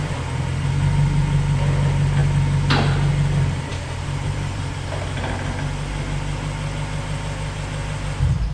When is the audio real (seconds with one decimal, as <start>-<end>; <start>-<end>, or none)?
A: 0.0-3.7; 4.6-8.5